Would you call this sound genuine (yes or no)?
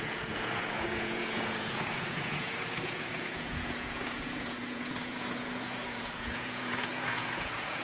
no